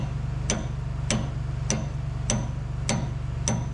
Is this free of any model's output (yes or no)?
yes